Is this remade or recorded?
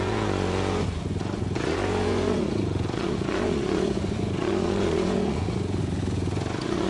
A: remade